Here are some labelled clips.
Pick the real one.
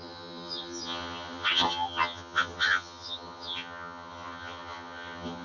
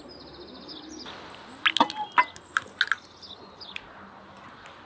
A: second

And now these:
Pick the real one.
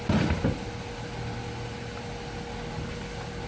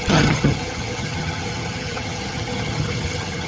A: first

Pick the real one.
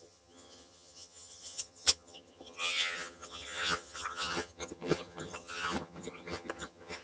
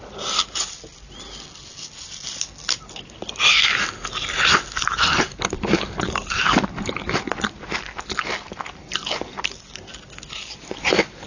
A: second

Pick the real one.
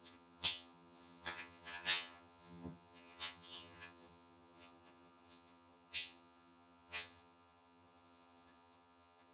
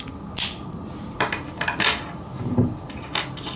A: second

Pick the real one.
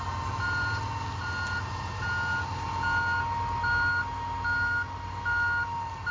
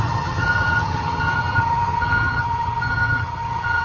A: first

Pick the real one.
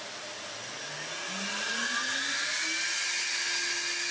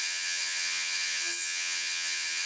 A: first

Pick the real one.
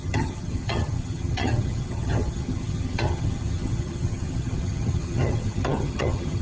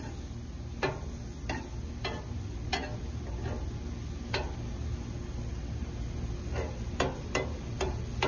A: second